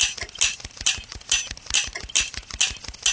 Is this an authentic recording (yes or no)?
yes